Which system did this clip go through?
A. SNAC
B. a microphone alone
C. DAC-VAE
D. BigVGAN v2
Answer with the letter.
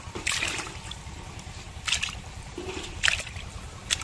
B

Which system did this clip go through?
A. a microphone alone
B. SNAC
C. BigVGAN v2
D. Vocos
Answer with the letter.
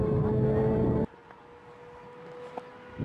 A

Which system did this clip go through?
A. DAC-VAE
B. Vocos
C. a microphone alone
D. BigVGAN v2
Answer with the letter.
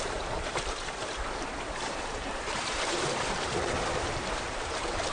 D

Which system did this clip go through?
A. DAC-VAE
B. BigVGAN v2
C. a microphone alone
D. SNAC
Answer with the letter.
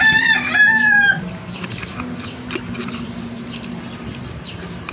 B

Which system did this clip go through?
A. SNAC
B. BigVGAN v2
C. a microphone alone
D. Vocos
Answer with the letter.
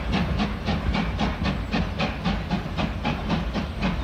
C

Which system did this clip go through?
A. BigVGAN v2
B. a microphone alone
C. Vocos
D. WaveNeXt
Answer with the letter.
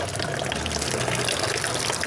B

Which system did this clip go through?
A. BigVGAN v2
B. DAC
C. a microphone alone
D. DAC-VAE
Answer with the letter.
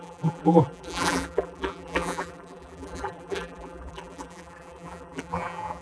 A